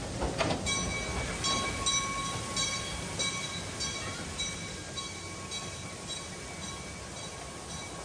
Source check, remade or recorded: recorded